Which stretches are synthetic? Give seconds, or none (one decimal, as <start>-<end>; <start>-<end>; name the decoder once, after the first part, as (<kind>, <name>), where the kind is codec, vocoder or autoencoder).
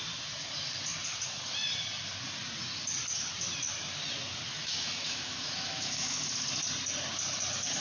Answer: 4.5-6.2 (autoencoder, DAC-VAE)